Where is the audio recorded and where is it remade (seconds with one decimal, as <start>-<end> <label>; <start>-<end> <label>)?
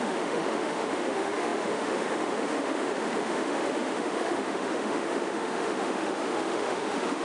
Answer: 0.0-7.2 remade